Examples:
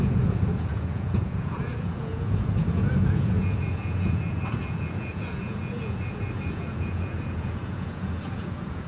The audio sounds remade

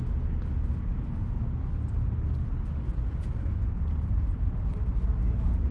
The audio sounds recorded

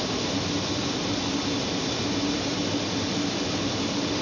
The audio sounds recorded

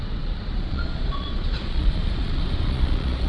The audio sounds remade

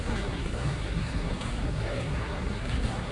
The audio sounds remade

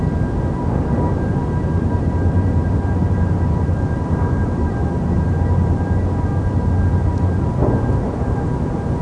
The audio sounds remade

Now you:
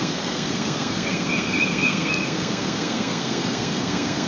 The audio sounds remade